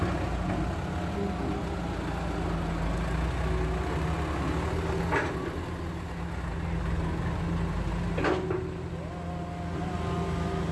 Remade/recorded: recorded